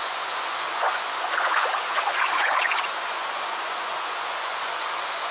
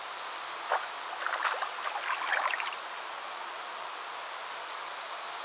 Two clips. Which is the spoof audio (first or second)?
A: first